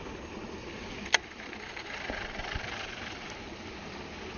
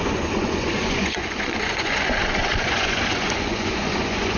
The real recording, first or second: first